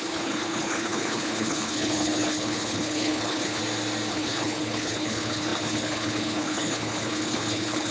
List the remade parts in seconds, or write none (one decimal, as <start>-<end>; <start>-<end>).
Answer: 0.0-3.6; 4.1-7.9